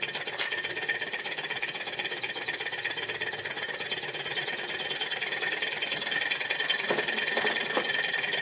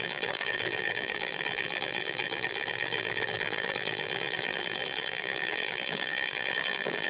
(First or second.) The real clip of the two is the first